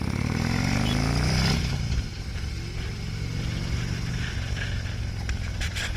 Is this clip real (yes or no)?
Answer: yes